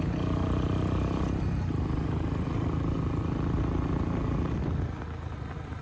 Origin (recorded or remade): recorded